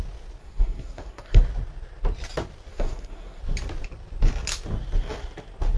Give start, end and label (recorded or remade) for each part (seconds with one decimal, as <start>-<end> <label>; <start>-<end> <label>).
0.0-0.4 recorded; 0.4-1.4 remade; 1.4-2.7 recorded; 2.7-3.4 remade; 3.4-5.8 recorded